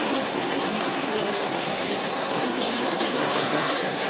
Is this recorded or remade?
remade